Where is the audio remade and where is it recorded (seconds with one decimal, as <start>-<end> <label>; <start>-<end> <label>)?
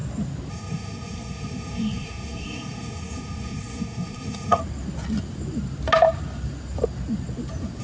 0.0-0.5 recorded; 0.5-4.6 remade; 4.6-7.8 recorded